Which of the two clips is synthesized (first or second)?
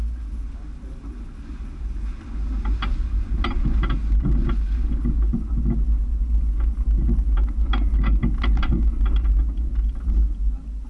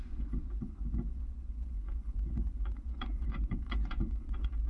second